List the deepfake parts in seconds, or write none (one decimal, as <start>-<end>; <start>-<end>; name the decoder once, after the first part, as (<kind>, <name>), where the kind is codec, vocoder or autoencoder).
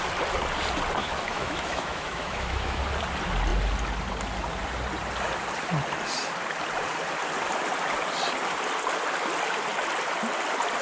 1.0-2.8 (autoencoder, DAC-VAE)